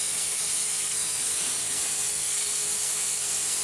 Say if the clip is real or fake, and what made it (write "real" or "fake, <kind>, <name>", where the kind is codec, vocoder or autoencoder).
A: fake, codec, SNAC